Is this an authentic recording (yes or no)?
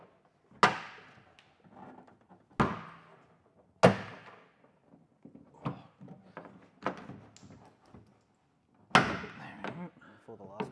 yes